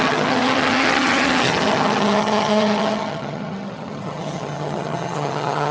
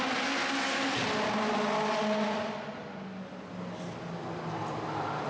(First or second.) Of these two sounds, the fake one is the first